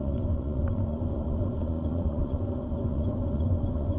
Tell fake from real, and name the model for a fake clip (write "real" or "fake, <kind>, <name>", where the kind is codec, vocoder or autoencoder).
fake, vocoder, Vocos